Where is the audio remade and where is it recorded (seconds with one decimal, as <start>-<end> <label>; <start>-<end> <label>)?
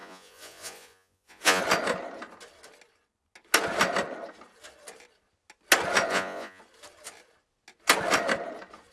0.0-1.6 remade; 1.6-6.1 recorded; 6.1-6.6 remade; 6.6-8.9 recorded